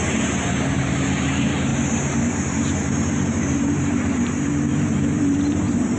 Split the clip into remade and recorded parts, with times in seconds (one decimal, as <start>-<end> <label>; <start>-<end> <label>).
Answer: 0.0-1.7 remade; 1.7-2.2 recorded; 2.2-6.0 remade